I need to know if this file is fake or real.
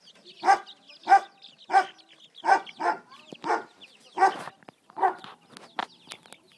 real